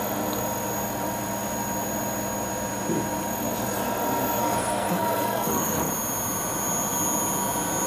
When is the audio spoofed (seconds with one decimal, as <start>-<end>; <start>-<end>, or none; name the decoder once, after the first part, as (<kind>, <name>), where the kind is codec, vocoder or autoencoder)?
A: 4.4-5.9 (codec, SNAC)